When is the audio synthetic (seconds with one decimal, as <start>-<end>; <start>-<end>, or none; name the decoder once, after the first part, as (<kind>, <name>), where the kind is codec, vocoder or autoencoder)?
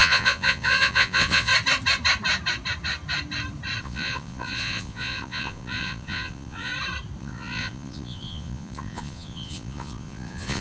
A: 0.0-1.5 (vocoder, Vocos); 3.8-6.7; 7.2-10.6